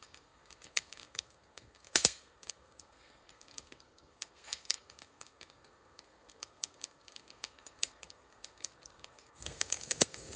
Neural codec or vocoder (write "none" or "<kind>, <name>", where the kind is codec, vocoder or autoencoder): codec, SNAC